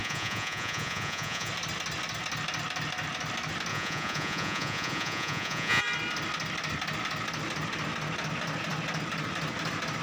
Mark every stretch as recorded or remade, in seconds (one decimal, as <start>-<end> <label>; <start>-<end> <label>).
0.0-1.5 remade; 1.5-3.7 recorded; 3.7-5.8 remade; 5.8-10.0 recorded